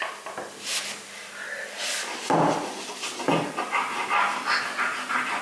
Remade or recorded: recorded